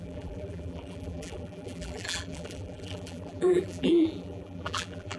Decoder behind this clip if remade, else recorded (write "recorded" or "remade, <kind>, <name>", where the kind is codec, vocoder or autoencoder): remade, vocoder, BigVGAN v2